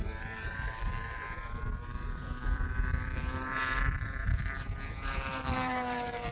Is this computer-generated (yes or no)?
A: yes